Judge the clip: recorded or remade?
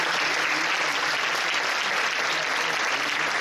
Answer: recorded